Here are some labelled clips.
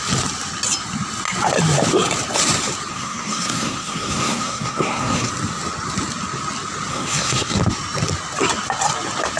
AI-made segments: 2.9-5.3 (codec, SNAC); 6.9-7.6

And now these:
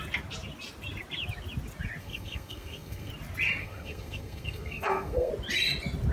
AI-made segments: 2.0-3.1 (codec, SNAC); 3.6-5.3

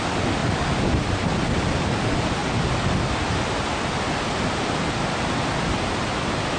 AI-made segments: none

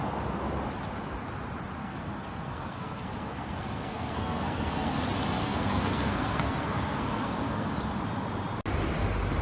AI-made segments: 1.8-5.0 (codec, SNAC); 5.4-7.7

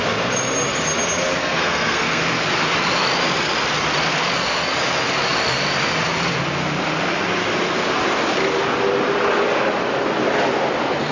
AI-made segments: 1.4-2.2 (codec, SNAC)

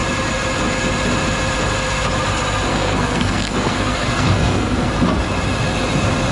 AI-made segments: 2.7-4.9 (codec, SNAC)